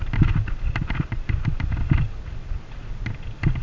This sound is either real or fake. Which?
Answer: real